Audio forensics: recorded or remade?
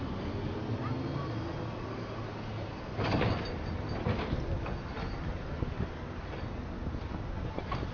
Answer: recorded